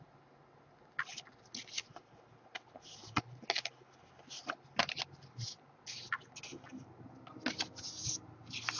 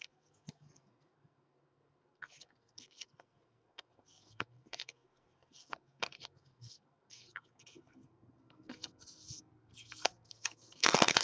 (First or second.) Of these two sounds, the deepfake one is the second